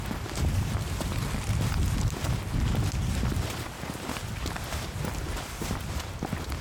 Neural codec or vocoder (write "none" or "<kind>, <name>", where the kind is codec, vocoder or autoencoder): none